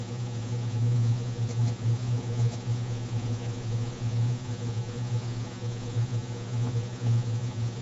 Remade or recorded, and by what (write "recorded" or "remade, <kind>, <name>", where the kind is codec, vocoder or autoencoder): remade, vocoder, Vocos